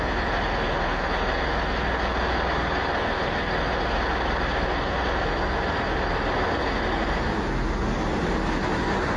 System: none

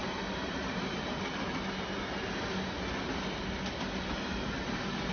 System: none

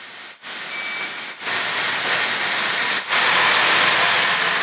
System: none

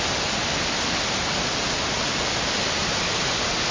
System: none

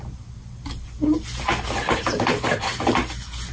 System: none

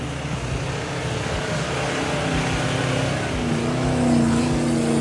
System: none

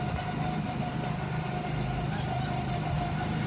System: none